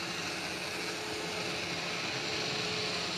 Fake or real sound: real